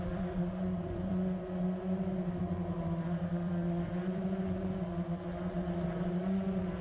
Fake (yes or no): yes